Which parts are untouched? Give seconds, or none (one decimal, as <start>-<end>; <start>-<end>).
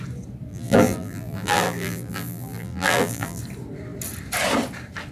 0.0-0.5; 3.4-5.1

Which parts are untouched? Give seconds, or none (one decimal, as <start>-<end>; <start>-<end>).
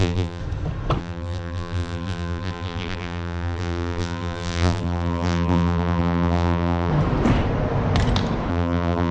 0.4-1.0; 6.9-8.5